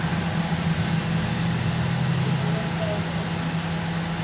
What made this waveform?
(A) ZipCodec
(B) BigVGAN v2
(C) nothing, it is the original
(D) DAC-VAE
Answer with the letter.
C